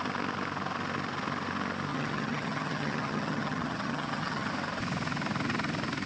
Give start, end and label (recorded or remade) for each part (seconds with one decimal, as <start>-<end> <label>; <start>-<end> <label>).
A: 0.0-1.9 recorded; 1.9-4.5 remade; 4.5-6.1 recorded